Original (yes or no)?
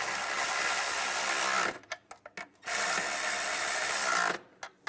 yes